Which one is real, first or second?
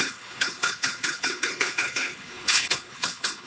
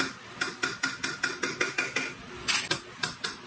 second